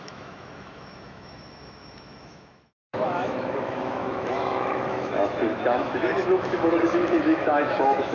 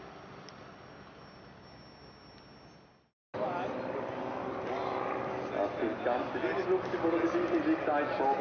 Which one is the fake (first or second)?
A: first